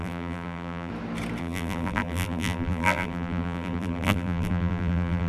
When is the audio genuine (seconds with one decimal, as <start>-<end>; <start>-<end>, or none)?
0.9-1.4